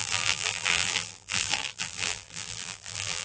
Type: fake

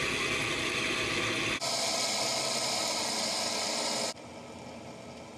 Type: real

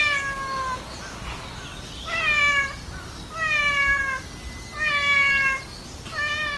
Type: real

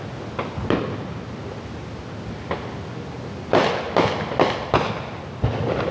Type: real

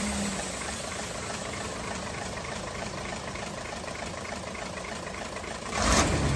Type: fake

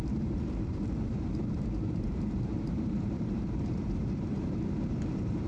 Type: fake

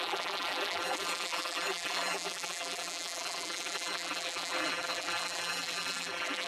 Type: fake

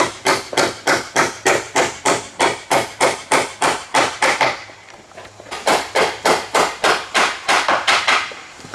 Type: fake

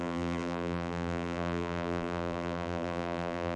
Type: fake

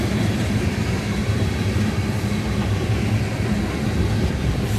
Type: fake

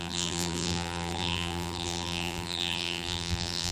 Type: fake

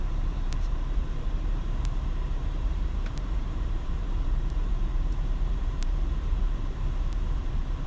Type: fake